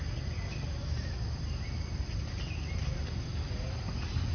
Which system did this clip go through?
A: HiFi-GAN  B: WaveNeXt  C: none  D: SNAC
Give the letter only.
C